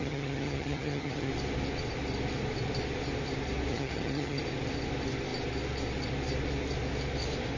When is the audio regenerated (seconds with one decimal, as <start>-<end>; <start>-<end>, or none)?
0.0-1.3; 3.7-4.4